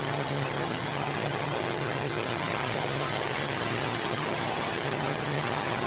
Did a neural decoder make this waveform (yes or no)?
yes